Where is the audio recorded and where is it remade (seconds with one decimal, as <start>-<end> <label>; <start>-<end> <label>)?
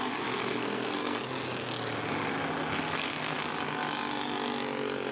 0.0-0.4 recorded; 0.4-1.2 remade; 1.2-2.7 recorded; 2.7-3.4 remade; 3.4-5.1 recorded